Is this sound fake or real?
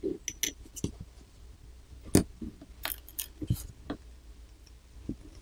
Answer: real